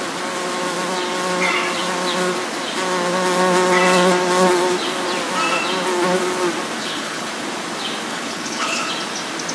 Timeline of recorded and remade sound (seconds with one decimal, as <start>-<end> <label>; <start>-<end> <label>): 0.0-6.8 recorded; 6.8-7.3 remade; 7.3-8.1 recorded; 8.1-8.9 remade; 8.9-9.5 recorded